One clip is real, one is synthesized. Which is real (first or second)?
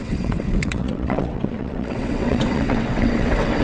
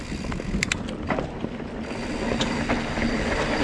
second